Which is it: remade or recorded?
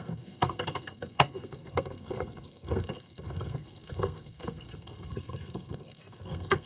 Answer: remade